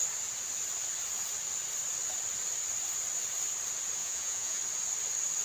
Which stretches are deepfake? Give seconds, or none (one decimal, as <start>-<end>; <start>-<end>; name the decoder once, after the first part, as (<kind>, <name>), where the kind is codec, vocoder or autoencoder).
4.0-4.6 (vocoder, Vocos)